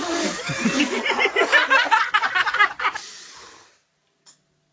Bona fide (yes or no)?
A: yes